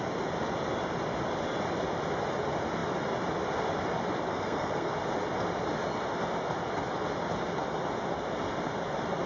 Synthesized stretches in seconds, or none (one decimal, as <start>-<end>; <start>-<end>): 4.3-4.9